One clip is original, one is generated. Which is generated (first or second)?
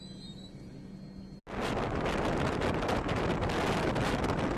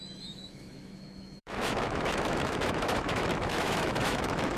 second